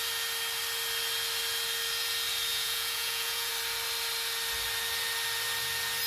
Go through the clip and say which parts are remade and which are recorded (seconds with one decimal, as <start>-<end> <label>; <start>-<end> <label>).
0.0-2.5 recorded; 2.5-3.5 remade; 3.5-6.1 recorded